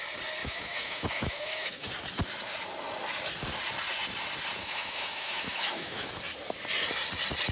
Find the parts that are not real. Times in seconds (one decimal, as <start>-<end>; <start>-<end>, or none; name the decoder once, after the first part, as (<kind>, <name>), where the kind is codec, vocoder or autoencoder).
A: 0.4-1.9 (autoencoder, DAC-VAE); 4.6-6.1